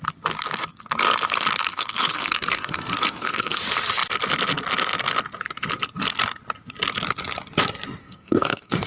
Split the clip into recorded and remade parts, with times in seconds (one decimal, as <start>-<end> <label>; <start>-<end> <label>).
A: 0.0-1.7 recorded; 1.7-3.6 remade; 3.6-8.0 recorded; 8.0-8.9 remade